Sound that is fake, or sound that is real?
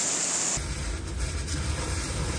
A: real